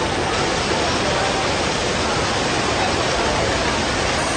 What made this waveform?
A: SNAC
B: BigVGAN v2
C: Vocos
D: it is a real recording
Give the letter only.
D